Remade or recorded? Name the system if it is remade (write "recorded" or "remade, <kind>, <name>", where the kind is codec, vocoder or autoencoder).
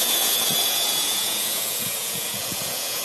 remade, vocoder, Vocos